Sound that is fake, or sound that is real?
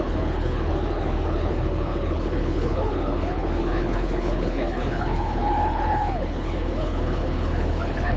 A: fake